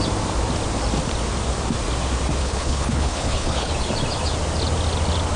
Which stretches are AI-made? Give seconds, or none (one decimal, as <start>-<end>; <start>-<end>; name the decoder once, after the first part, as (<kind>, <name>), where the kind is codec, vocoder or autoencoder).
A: 2.4-3.7 (codec, HILCodec)